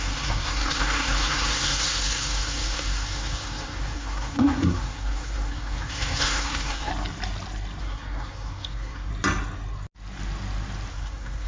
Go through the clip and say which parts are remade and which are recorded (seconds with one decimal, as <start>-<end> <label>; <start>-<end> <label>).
0.0-6.9 remade; 6.9-7.8 recorded; 7.8-9.1 remade; 9.1-10.9 recorded; 10.9-11.5 remade